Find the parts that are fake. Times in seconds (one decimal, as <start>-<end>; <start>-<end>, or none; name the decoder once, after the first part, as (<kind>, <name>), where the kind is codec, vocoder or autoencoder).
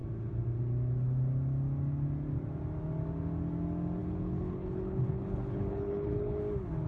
4.0-6.4 (codec, HILCodec)